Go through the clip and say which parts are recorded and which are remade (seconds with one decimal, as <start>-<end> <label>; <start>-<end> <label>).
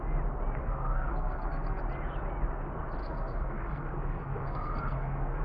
0.0-0.6 recorded; 0.6-1.8 remade; 1.8-3.0 recorded; 3.0-5.4 remade